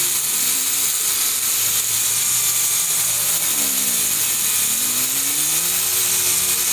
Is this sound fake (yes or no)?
no